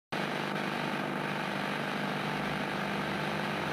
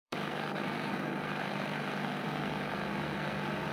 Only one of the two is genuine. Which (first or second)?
first